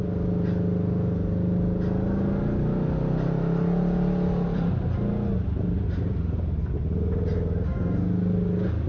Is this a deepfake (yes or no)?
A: no